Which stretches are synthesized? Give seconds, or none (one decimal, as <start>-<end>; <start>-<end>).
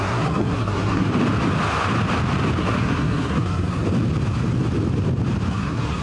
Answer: 0.0-1.1; 2.6-3.8; 5.5-6.0